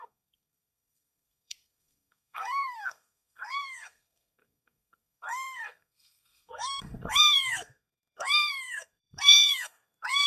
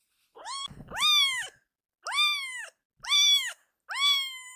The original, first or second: second